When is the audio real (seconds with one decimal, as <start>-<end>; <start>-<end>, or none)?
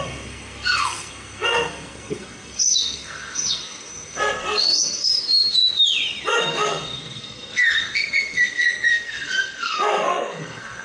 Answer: 5.1-6.4